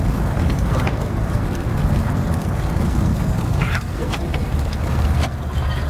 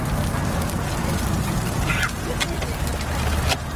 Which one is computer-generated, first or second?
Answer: first